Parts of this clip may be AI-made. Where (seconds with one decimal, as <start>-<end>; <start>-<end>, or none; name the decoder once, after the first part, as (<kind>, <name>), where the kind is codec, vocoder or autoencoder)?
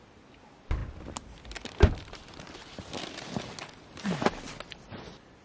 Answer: none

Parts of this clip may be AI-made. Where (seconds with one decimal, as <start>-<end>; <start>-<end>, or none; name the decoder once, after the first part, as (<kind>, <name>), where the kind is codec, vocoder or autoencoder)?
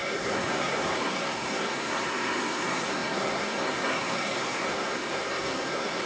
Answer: 0.0-6.1 (codec, SNAC)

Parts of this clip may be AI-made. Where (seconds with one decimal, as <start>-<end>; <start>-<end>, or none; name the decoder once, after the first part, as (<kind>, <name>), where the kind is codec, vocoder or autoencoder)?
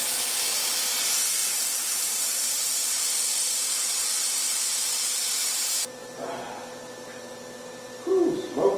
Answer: 1.4-6.4 (vocoder, BigVGAN v2)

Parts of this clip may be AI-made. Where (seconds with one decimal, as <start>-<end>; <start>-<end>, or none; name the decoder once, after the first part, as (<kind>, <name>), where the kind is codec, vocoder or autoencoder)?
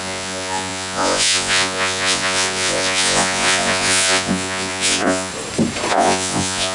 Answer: 0.0-5.3 (vocoder, Vocos); 5.9-6.7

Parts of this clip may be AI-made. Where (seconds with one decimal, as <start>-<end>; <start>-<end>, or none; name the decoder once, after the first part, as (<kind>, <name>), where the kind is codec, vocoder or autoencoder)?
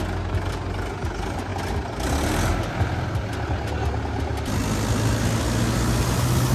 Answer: none